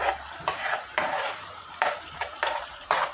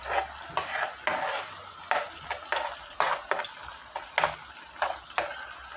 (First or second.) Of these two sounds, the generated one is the first